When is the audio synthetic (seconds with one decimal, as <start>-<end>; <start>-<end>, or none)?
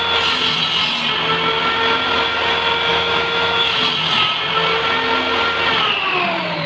2.9-3.8